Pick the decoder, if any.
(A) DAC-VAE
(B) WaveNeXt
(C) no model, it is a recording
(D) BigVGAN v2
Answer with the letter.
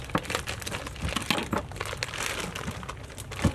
C